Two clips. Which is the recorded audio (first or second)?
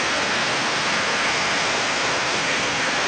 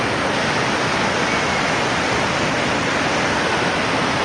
second